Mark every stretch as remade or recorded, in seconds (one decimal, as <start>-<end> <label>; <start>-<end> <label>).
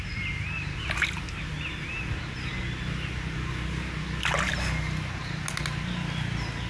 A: 0.0-6.7 recorded